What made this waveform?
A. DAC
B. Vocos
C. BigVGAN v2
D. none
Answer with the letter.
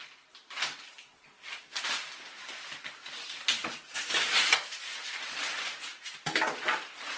D